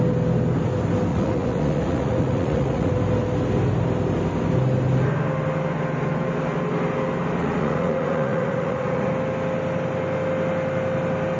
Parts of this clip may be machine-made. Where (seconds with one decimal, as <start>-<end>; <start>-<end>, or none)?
1.1-2.9; 7.4-9.1